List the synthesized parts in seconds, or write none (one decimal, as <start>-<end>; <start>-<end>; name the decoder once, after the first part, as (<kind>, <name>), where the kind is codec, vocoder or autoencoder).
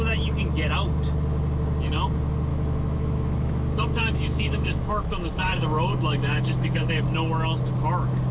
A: 2.5-6.9 (autoencoder, DAC-VAE)